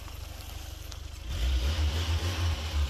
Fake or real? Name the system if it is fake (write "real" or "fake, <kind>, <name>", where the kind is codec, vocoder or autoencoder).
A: real